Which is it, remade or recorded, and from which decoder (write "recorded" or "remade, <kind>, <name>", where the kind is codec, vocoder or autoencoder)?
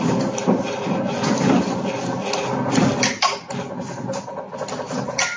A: recorded